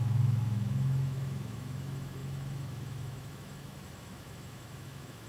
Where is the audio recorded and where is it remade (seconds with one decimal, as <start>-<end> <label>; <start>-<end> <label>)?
0.0-5.3 remade